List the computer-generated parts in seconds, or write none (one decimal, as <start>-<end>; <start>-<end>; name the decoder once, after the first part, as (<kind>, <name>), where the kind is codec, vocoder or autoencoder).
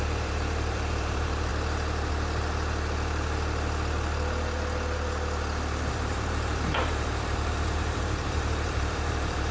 0.0-1.5 (vocoder, BigVGAN v2); 5.9-9.5